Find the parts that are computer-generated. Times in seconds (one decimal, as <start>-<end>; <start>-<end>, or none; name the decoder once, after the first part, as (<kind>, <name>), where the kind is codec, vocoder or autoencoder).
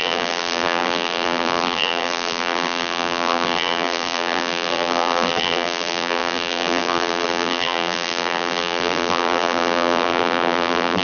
0.0-11.0 (vocoder, BigVGAN v2)